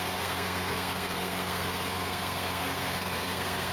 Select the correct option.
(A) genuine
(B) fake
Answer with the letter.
B